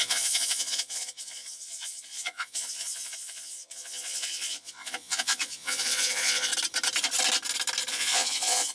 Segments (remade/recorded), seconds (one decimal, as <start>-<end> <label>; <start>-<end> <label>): 0.0-6.5 remade; 6.5-7.9 recorded; 7.9-8.7 remade